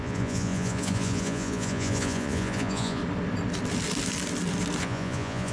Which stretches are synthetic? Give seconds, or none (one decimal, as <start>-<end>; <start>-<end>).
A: 0.0-3.0; 4.8-5.5